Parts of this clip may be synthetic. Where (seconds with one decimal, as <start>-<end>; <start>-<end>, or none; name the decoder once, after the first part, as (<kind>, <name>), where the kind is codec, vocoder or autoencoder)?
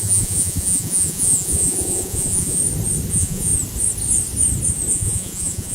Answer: 0.0-2.6 (vocoder, Vocos); 3.1-3.5; 4.9-5.7